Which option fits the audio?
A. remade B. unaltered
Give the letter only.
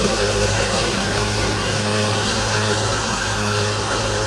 A